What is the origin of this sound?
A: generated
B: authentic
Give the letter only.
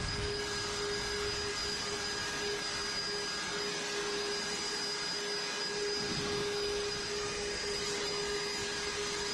B